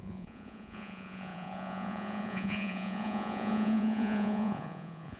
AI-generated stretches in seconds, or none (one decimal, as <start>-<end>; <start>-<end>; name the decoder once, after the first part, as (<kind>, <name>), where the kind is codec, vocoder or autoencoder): 0.0-5.2 (vocoder, Vocos)